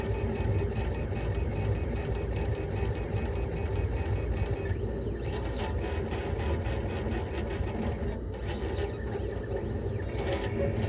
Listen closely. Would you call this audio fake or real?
real